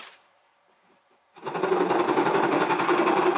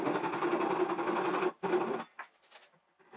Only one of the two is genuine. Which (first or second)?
second